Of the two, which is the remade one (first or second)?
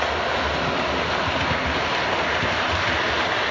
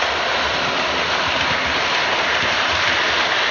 second